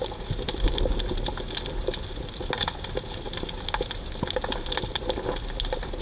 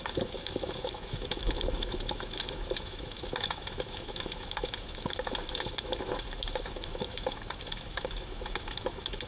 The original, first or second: first